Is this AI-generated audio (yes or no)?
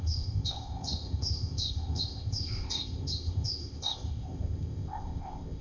yes